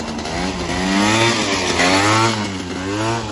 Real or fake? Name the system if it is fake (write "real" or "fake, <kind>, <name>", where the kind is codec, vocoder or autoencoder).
real